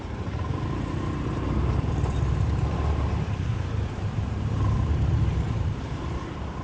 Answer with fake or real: fake